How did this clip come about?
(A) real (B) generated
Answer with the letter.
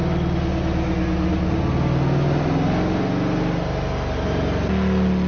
A